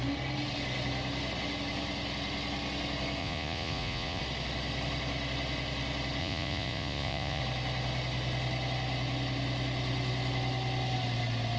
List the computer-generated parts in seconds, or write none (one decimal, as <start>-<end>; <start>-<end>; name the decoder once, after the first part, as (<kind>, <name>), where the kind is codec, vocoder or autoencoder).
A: 3.2-4.2 (vocoder, Vocos); 6.2-7.4